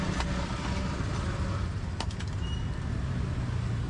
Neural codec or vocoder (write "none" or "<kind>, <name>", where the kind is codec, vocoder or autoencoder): none